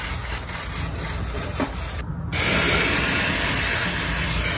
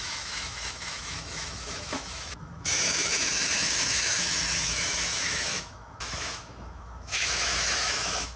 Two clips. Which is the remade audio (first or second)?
second